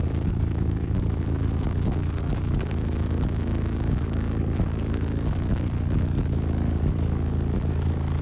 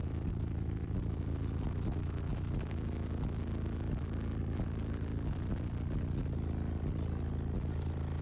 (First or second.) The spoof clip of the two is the first